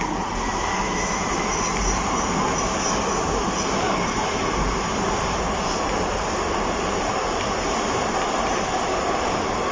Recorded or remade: recorded